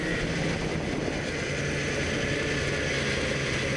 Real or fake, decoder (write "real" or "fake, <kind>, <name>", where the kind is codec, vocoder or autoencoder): real